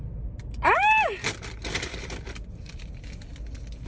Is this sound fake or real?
real